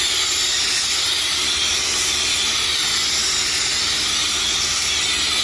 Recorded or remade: recorded